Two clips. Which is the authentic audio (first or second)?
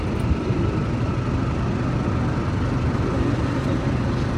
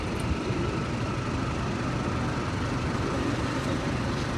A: first